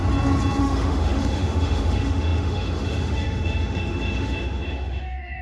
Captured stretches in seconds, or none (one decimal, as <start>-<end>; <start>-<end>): 0.0-0.6